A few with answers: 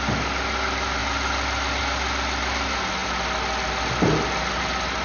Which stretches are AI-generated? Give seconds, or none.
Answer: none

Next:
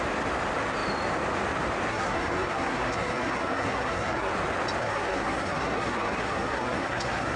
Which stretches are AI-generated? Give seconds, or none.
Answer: 1.9-4.3; 4.8-7.4

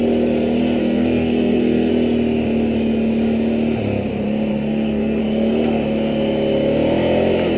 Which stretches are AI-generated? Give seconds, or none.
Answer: 0.8-1.9; 4.5-5.2

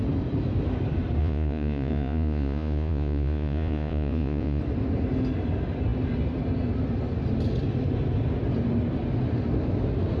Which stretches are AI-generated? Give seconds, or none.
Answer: 1.2-4.6

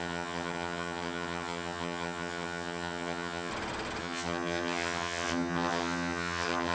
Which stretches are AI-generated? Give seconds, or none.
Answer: 0.0-3.5; 4.0-6.7

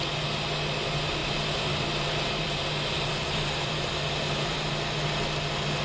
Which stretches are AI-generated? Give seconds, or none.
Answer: 1.2-4.7